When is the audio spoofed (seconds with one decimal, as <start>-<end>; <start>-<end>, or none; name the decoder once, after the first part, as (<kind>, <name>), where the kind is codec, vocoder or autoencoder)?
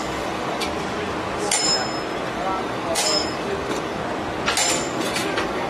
0.0-0.7 (codec, DAC); 2.3-4.0; 4.7-5.7